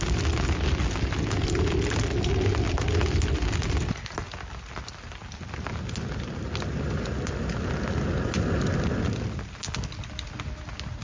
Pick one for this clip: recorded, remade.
recorded